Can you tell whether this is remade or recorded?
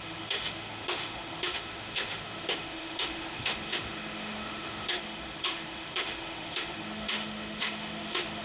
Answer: remade